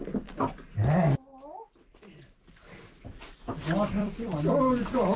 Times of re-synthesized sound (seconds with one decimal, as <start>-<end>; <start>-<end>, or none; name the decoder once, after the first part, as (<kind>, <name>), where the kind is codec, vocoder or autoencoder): 4.0-5.2 (vocoder, BigVGAN v2)